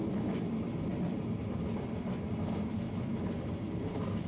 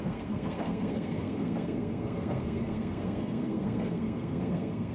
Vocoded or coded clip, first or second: second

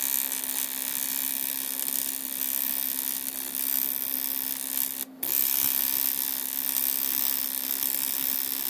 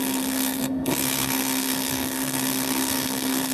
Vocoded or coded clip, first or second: second